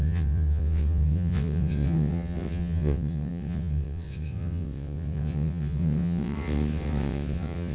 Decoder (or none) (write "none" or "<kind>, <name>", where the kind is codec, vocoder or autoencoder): vocoder, WaveNeXt